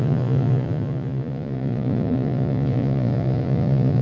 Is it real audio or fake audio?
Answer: fake